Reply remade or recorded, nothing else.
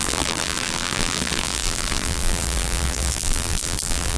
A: remade